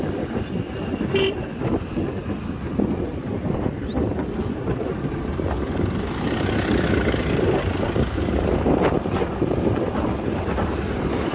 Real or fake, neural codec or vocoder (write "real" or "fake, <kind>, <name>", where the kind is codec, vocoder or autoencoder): real